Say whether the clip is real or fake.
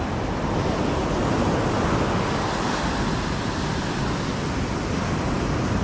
real